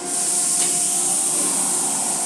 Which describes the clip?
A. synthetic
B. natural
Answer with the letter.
B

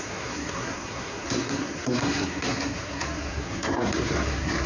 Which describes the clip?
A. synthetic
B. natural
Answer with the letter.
A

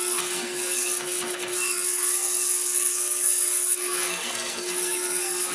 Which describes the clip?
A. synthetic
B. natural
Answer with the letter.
A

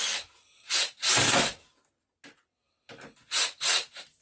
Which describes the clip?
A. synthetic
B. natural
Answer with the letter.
B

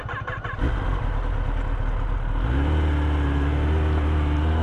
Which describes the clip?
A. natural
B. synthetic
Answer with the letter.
A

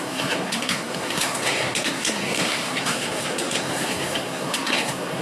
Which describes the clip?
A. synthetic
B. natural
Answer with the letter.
A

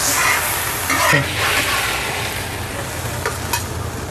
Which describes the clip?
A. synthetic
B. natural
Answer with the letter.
B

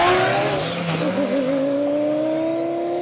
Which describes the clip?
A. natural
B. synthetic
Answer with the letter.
A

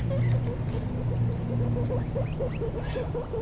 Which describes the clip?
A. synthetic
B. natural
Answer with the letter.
B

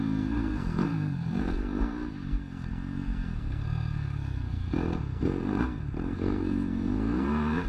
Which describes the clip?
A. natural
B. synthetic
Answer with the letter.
B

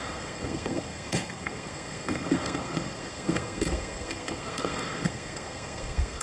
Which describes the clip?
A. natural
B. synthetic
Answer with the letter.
B